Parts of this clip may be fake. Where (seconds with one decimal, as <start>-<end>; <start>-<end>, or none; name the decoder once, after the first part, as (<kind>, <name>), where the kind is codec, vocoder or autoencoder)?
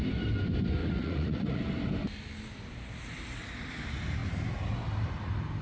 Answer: 0.8-1.6 (vocoder, Vocos)